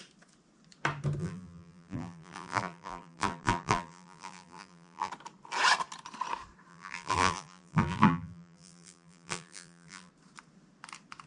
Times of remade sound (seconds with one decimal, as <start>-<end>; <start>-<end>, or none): 1.2-5.1; 6.7-10.1